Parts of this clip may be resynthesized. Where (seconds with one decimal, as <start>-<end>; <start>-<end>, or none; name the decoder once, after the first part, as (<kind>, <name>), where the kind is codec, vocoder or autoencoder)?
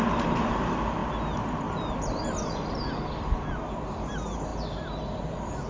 none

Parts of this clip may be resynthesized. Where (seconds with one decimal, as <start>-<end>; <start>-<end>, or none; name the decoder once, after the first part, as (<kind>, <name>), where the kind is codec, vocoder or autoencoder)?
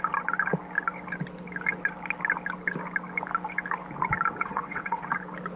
4.4-5.0 (vocoder, WaveNeXt)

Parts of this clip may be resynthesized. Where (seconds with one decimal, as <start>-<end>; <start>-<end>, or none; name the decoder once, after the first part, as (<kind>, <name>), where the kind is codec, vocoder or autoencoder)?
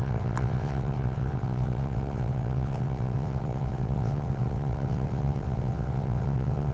0.0-6.7 (vocoder, WaveNeXt)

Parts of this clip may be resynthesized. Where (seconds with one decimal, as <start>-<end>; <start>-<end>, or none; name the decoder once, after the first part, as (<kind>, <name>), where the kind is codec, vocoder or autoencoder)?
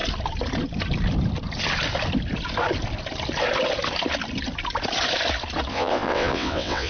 5.7-6.9 (vocoder, WaveNeXt)